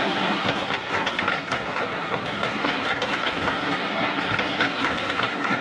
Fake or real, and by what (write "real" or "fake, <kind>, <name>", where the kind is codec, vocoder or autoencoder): fake, codec, SNAC